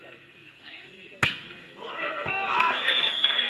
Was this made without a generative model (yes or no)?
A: no